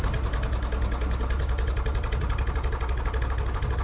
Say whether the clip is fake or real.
real